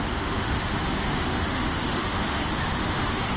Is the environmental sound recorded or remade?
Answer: remade